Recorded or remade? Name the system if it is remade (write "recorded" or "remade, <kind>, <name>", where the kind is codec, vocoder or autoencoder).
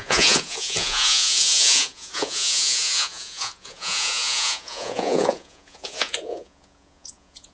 remade, vocoder, Vocos